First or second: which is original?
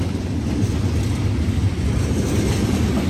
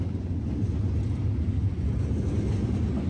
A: second